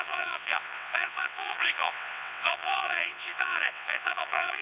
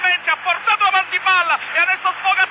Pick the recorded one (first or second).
second